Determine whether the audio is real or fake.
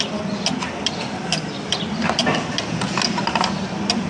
real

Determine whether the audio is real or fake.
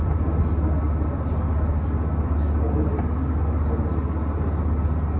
real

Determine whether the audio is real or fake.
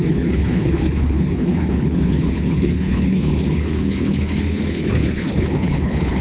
fake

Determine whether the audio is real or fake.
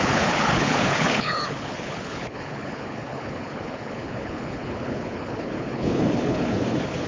fake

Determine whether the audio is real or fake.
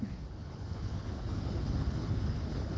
fake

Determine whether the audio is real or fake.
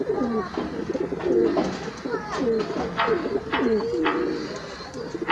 real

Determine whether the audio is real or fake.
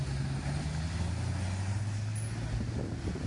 real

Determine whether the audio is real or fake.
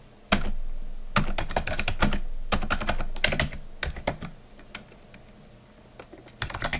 real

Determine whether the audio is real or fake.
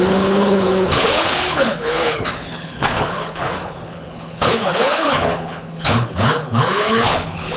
fake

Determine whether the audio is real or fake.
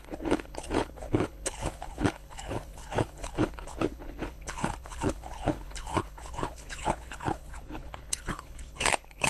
fake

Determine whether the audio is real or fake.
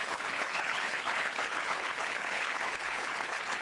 fake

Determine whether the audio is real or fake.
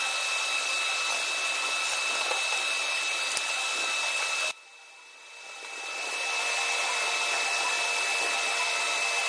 real